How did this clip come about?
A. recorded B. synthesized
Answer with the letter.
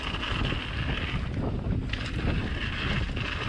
A